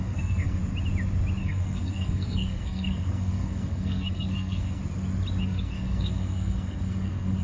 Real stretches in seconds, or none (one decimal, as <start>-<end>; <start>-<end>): 0.6-1.4; 4.8-5.4